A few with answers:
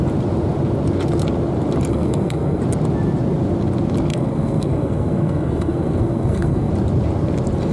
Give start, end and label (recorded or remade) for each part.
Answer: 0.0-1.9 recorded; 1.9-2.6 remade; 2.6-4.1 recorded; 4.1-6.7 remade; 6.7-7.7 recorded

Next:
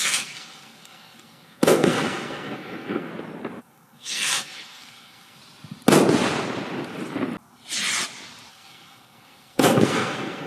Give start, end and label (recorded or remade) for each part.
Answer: 0.0-3.1 remade; 3.1-3.6 recorded; 3.6-5.4 remade; 5.4-8.5 recorded; 8.5-10.5 remade

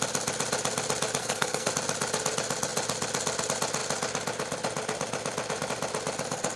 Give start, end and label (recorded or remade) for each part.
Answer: 0.0-1.2 recorded; 1.2-1.7 remade; 1.7-6.6 recorded

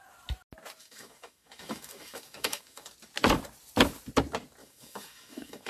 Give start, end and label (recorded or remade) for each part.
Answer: 0.0-0.8 recorded; 0.8-2.9 remade; 2.9-4.6 recorded; 4.6-5.7 remade

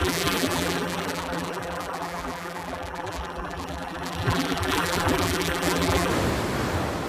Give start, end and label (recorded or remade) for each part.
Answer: 0.0-6.1 remade; 6.1-7.1 recorded

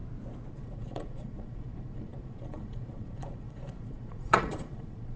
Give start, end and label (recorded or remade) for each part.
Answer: 0.0-0.5 recorded; 0.5-5.2 remade